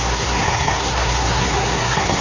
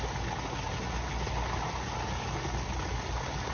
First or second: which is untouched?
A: second